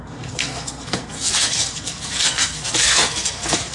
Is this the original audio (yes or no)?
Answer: no